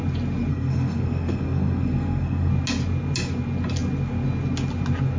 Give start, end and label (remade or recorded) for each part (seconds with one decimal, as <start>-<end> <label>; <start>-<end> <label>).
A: 0.0-0.5 recorded; 0.5-2.5 remade; 2.5-5.2 recorded